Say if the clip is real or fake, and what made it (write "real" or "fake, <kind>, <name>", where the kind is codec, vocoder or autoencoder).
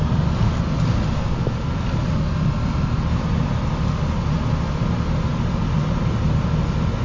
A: real